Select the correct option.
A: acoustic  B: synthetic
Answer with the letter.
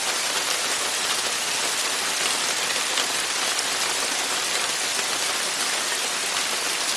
A